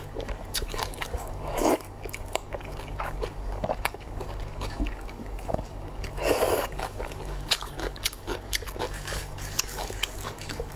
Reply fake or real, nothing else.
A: fake